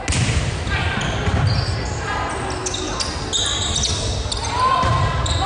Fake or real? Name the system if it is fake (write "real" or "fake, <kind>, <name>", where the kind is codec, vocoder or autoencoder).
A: real